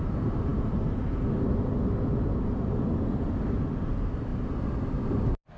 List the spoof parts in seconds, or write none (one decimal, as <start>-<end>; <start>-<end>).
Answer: none